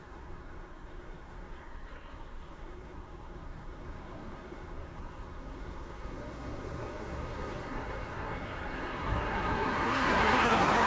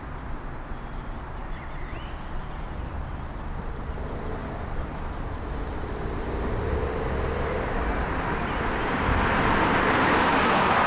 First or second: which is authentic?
second